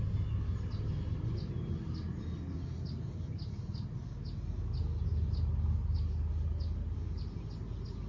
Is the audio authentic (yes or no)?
yes